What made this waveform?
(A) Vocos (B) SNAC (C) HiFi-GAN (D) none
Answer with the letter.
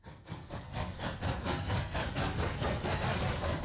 B